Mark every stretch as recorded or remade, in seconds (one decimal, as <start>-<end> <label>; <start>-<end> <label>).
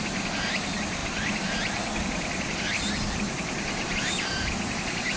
0.0-5.2 remade